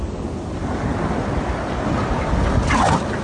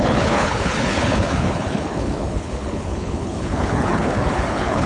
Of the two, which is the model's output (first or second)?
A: second